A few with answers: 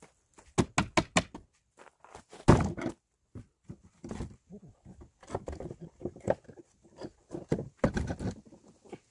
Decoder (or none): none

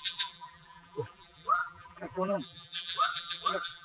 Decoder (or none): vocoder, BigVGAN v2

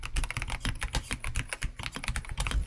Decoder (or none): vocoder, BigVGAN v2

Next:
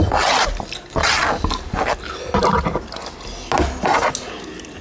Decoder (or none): none